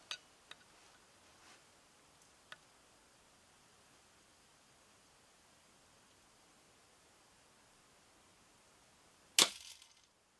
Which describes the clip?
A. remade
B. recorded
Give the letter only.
B